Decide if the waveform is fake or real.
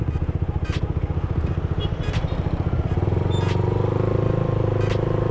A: real